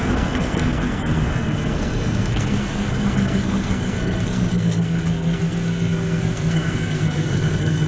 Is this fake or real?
fake